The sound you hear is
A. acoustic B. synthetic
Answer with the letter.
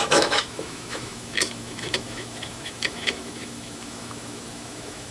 B